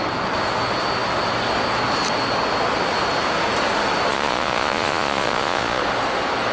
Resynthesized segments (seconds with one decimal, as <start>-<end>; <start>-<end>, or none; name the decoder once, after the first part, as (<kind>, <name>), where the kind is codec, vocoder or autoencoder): 4.1-5.8 (vocoder, Vocos)